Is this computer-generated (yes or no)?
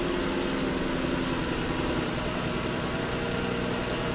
no